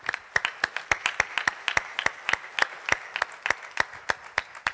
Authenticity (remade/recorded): recorded